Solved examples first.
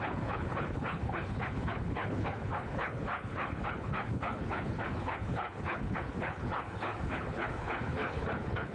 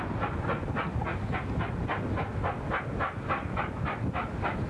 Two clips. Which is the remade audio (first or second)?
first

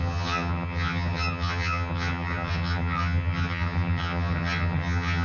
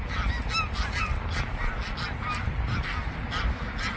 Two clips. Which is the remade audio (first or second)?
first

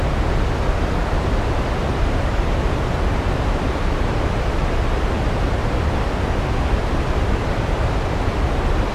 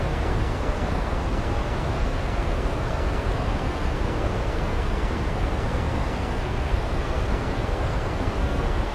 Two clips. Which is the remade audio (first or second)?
second